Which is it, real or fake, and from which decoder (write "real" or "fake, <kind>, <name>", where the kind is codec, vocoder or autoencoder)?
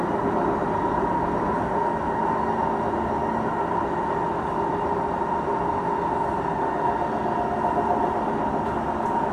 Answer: real